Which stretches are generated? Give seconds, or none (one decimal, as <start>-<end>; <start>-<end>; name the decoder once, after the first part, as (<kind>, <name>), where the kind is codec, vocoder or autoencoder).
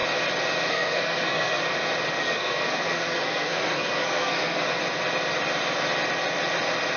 0.7-1.7 (codec, SNAC); 2.2-4.8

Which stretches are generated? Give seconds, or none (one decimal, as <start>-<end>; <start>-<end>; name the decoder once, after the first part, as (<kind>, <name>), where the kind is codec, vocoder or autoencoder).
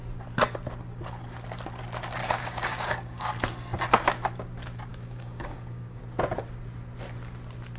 2.2-3.3 (codec, DAC); 4.9-6.0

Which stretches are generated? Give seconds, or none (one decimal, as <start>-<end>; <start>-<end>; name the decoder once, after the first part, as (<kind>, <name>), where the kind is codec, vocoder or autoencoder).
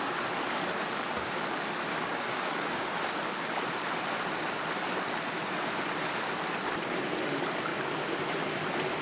1.9-3.0 (codec, DAC)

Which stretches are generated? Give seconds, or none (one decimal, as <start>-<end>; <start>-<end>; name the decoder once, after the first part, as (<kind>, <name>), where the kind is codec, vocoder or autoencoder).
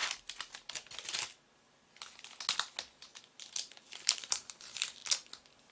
3.4-5.0 (vocoder, BigVGAN v2)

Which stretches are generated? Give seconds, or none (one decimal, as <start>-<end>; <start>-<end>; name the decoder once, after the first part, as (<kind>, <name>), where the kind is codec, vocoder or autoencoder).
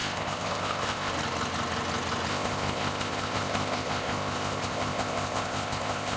0.0-1.1 (codec, ZipCodec); 2.3-6.2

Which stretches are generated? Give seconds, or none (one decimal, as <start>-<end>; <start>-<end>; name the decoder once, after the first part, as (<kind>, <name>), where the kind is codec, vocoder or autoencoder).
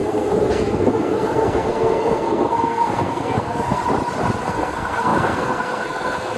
0.0-3.8 (codec, SNAC); 4.4-6.4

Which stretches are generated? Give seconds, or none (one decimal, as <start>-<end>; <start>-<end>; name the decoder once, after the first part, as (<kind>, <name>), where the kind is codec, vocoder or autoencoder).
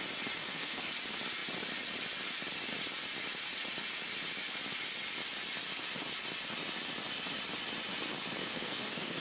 0.4-0.9 (codec, SNAC); 8.4-9.2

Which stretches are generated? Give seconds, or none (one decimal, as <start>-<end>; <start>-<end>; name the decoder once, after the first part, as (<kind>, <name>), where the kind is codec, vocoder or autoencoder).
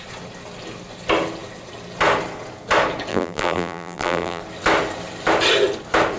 3.1-4.4 (vocoder, BigVGAN v2)